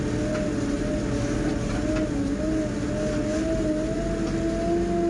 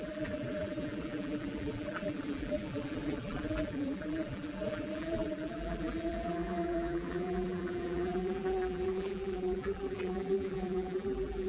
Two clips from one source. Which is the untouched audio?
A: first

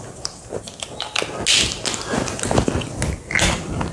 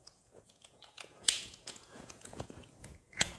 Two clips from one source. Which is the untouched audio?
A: first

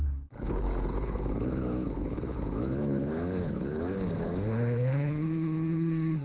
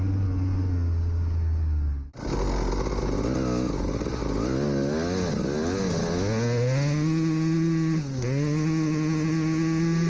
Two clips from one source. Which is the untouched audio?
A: second